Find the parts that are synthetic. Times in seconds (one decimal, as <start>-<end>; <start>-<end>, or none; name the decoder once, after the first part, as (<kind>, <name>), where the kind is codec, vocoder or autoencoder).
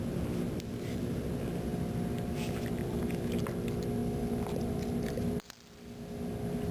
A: 1.7-3.0 (vocoder, BigVGAN v2); 4.0-6.7